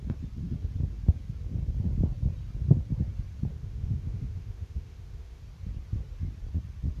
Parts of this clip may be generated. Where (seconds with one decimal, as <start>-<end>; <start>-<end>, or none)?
3.5-5.4